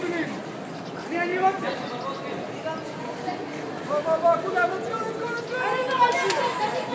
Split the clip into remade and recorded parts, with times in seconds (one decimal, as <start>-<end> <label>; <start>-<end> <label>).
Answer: 0.0-6.9 recorded

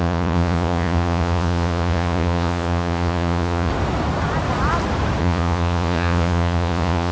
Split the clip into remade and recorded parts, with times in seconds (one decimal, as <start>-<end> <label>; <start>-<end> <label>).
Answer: 0.0-3.7 remade; 3.7-5.2 recorded; 5.2-7.1 remade

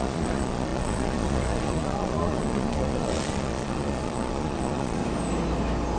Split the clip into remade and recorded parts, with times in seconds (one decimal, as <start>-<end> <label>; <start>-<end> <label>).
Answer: 0.0-5.0 remade; 5.0-6.0 recorded

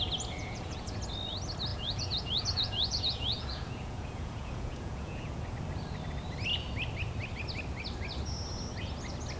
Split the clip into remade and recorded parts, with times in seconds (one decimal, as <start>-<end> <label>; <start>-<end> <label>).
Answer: 0.0-0.4 recorded; 0.4-1.0 remade; 1.0-1.7 recorded; 1.7-5.4 remade; 5.4-9.4 recorded